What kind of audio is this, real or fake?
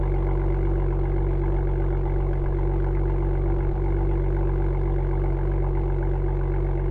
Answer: real